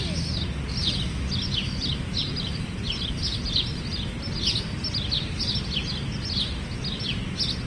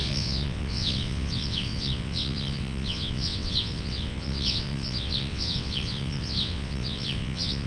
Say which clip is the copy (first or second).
second